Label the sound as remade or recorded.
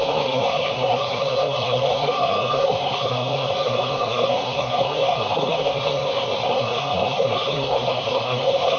remade